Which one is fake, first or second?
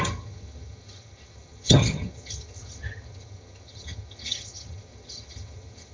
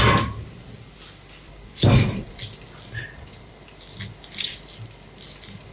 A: first